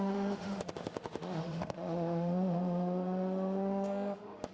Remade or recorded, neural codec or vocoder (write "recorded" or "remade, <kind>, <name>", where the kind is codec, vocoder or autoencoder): remade, autoencoder, DAC-VAE